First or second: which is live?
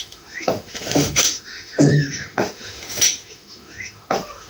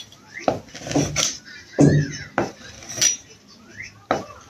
second